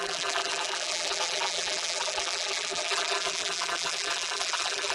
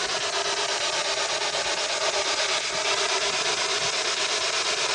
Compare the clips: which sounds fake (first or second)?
first